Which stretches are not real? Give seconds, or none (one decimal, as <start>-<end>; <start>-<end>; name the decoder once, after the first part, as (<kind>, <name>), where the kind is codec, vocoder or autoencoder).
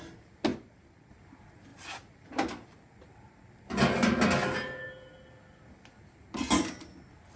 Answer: none